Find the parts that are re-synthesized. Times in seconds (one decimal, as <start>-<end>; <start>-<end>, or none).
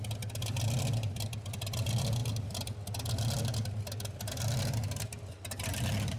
none